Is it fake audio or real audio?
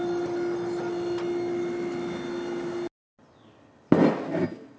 real